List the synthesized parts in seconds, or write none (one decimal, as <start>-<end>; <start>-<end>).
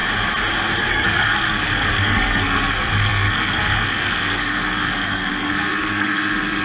0.8-6.6